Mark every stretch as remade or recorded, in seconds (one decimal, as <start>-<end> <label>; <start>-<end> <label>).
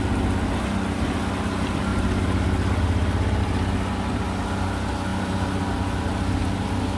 0.0-7.0 recorded